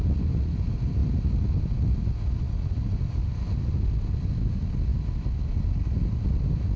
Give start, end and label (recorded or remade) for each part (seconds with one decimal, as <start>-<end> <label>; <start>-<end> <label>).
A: 0.0-6.8 recorded